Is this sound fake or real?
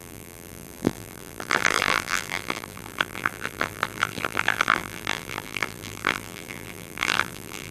fake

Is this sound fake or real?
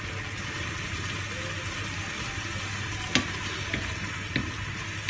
real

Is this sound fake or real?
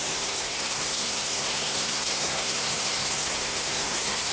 fake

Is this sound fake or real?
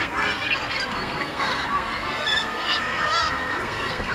fake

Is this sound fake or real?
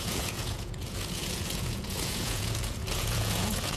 fake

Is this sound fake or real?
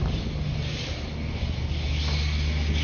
real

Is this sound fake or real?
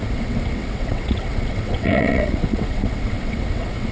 fake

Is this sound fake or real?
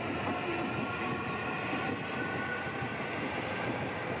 real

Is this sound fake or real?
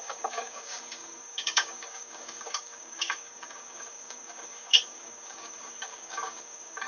fake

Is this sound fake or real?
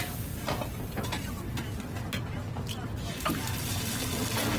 real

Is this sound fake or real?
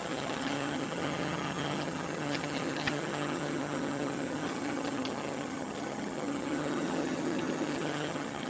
fake